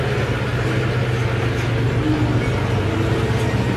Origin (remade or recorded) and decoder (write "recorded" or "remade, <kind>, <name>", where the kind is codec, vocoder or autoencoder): recorded